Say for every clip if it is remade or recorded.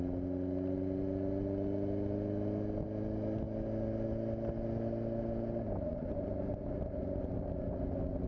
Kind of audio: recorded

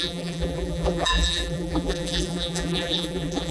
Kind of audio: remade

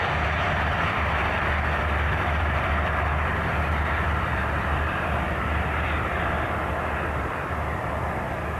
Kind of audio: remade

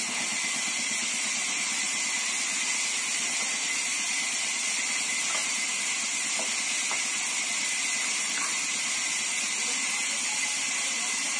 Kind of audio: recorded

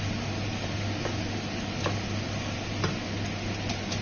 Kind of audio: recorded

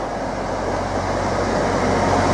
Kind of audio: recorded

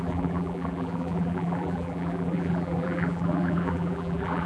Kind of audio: remade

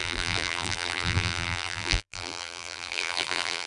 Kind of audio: remade